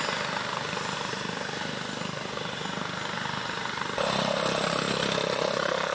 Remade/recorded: recorded